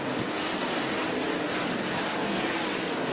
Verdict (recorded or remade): recorded